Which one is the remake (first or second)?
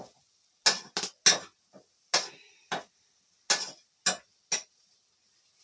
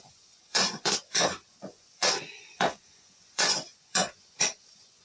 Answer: second